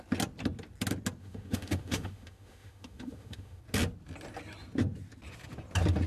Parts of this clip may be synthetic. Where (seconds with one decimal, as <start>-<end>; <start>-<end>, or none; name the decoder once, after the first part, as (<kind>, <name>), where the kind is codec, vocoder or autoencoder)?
1.2-3.6 (autoencoder, DAC-VAE)